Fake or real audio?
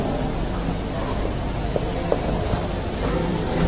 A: real